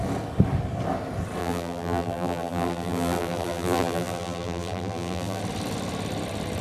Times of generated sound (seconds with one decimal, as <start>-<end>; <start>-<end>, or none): 1.4-5.4